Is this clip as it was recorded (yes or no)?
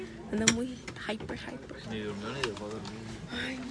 yes